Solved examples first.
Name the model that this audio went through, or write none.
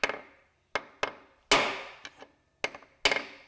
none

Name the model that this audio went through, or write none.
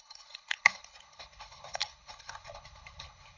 codec, HILCodec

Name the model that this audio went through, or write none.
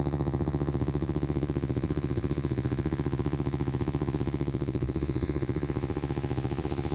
vocoder, Vocos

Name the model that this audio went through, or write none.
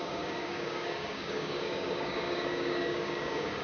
codec, DAC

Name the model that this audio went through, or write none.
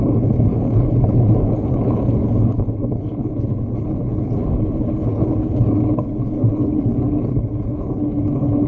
codec, HILCodec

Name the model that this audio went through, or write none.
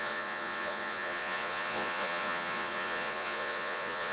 vocoder, Vocos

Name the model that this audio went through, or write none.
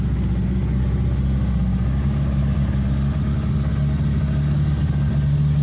none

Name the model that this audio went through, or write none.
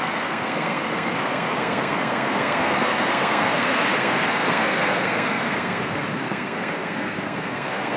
codec, SNAC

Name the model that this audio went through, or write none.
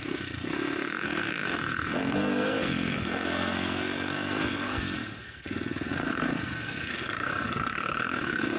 codec, SNAC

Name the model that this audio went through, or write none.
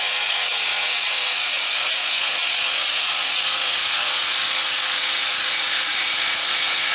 vocoder, Vocos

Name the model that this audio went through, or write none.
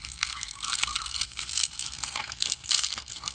codec, SNAC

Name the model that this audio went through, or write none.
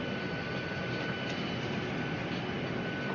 none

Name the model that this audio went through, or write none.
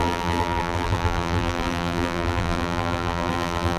vocoder, BigVGAN v2